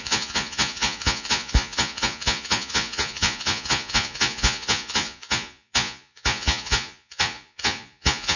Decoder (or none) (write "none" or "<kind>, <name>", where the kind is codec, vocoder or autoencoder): vocoder, Vocos